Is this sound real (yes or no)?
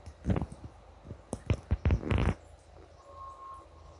yes